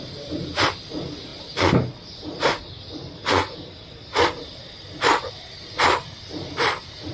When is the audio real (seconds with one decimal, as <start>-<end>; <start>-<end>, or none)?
0.0-7.1